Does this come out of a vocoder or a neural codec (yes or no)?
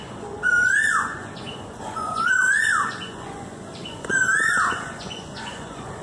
yes